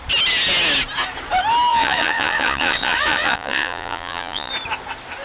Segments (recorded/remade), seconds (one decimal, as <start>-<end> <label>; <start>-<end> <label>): 0.0-1.7 recorded; 1.7-4.5 remade; 4.5-5.2 recorded